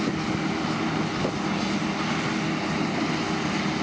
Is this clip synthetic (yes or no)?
no